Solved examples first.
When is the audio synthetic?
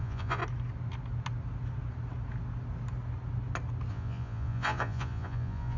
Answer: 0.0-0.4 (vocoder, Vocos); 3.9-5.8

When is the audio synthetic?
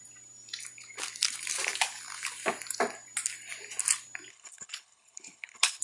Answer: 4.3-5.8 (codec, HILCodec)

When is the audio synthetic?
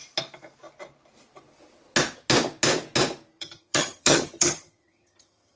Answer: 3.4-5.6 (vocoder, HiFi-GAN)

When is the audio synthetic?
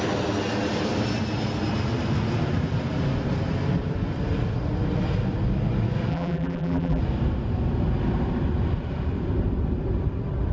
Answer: 6.1-7.0 (vocoder, BigVGAN v2)